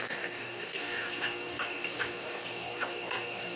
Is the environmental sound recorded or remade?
remade